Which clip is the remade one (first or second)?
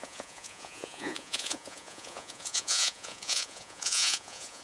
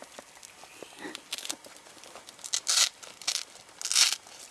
first